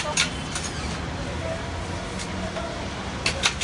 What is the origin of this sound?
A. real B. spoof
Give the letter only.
A